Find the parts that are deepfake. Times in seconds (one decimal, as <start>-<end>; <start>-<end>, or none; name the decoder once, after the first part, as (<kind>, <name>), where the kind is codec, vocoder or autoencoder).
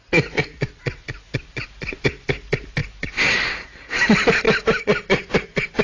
none